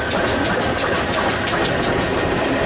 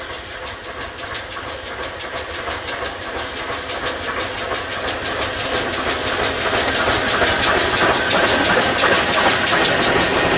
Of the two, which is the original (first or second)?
second